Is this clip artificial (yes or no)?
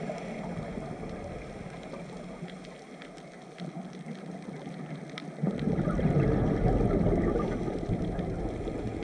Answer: no